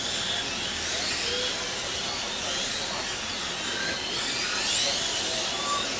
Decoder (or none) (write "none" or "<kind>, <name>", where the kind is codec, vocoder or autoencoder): none